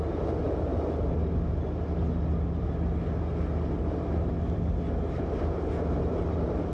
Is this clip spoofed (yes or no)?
no